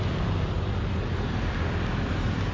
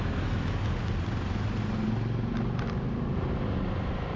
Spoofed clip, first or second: first